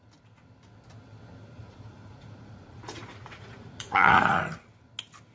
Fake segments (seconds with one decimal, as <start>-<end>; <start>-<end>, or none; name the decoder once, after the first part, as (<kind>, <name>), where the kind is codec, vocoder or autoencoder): 1.6-4.4 (vocoder, Vocos)